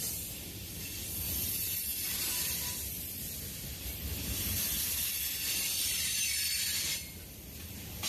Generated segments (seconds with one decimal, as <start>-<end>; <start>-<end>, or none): none